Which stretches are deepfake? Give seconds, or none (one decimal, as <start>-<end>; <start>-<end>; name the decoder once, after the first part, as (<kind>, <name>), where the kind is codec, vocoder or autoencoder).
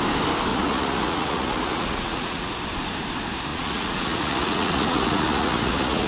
0.5-2.5 (vocoder, Vocos); 3.5-6.1